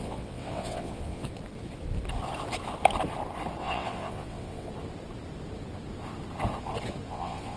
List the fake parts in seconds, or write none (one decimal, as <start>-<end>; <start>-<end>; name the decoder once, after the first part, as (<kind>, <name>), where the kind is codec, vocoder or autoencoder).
0.0-1.3 (vocoder, WaveNeXt); 3.6-4.7; 7.1-7.6